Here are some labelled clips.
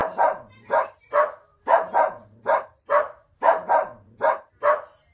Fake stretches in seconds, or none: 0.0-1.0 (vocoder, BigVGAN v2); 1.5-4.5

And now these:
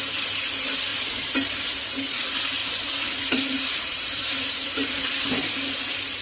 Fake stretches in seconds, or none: 0.9-1.5 (vocoder, BigVGAN v2); 2.6-5.3

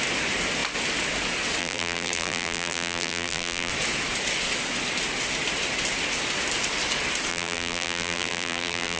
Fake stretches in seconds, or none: 1.6-3.7 (vocoder, BigVGAN v2); 7.3-9.0

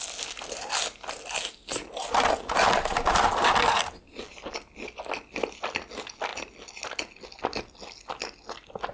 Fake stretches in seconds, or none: none

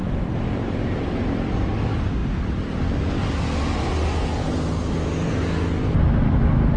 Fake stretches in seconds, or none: 0.0-1.7 (vocoder, BigVGAN v2)

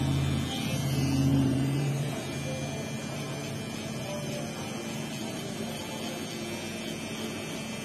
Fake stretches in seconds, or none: 1.3-2.1 (vocoder, BigVGAN v2); 5.2-5.8